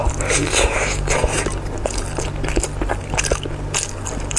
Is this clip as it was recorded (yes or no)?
yes